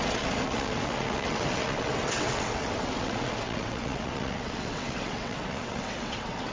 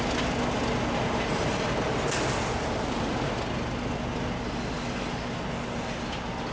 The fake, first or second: first